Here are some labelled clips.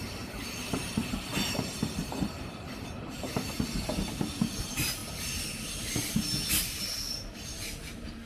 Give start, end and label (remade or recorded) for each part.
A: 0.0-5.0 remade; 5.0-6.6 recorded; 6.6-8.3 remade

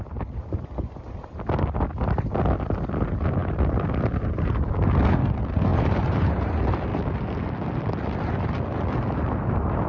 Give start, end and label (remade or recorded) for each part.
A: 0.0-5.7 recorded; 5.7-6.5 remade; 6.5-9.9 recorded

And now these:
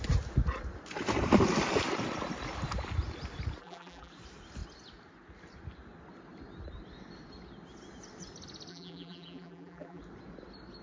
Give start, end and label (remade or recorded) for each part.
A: 0.0-3.6 recorded; 3.6-4.1 remade; 4.1-8.7 recorded; 8.7-10.0 remade; 10.0-10.8 recorded

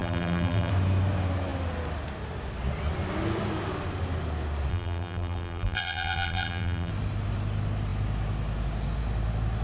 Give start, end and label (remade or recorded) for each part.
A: 0.0-0.7 remade; 0.7-4.7 recorded; 4.7-6.9 remade; 6.9-9.6 recorded

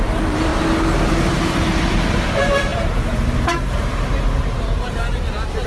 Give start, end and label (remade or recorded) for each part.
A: 0.0-0.5 remade; 0.5-1.1 recorded; 1.1-5.7 remade

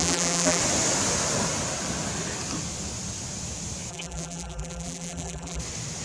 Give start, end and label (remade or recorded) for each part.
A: 0.0-0.6 remade; 0.6-3.9 recorded; 3.9-5.6 remade; 5.6-6.0 recorded